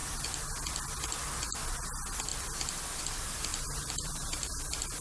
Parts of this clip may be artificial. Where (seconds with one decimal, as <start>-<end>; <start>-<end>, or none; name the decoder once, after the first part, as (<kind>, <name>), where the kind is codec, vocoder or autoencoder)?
3.5-4.6 (vocoder, BigVGAN v2)